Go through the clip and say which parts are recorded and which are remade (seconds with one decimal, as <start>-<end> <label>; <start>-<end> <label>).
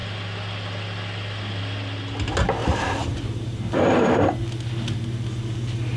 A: 0.0-2.6 recorded; 2.6-4.2 remade; 4.2-6.0 recorded